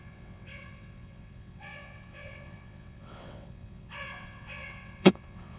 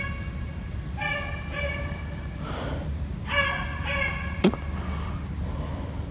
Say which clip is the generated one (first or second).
first